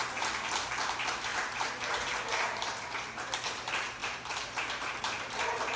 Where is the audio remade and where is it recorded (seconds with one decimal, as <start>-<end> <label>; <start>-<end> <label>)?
0.0-5.8 remade